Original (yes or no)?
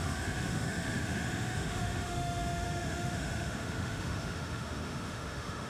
no